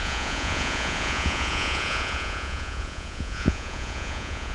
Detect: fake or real fake